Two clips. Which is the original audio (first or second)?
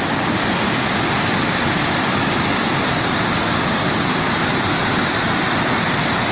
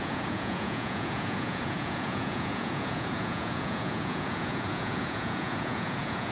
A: first